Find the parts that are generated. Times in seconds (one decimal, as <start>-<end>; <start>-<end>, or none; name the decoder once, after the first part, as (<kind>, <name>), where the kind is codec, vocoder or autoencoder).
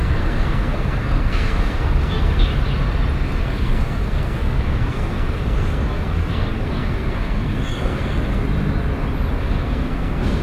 0.0-2.5 (codec, SNAC); 3.4-8.4; 9.3-10.4